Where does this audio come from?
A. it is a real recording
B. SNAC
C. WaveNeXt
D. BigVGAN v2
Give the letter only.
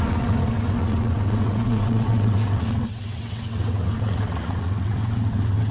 C